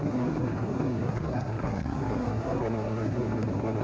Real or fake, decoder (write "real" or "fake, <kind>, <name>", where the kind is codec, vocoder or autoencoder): fake, codec, SNAC